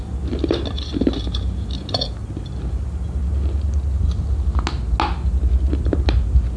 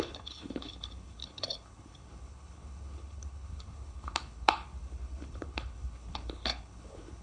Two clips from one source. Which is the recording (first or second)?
first